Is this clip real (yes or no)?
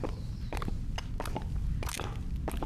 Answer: yes